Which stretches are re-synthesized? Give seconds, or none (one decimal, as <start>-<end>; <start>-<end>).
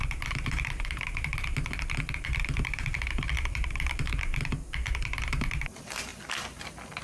0.0-1.3; 2.1-4.3; 4.9-6.1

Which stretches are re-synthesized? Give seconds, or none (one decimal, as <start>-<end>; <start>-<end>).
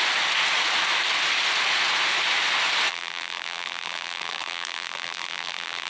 2.9-5.9